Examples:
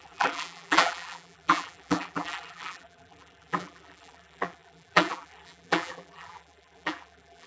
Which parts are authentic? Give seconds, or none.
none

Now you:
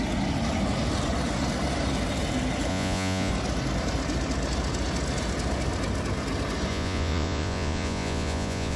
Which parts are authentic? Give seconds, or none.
0.0-2.7; 3.3-6.7

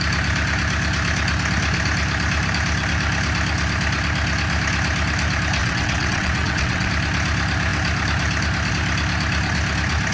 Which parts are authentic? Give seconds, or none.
0.0-5.6; 6.9-10.1

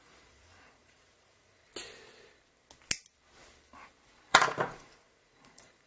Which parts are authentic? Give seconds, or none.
1.7-4.3

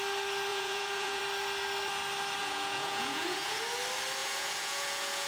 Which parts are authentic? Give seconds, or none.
0.0-0.5; 1.2-2.4; 3.6-4.2

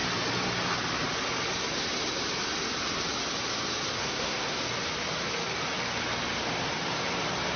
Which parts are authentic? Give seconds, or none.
0.0-4.0; 4.6-7.6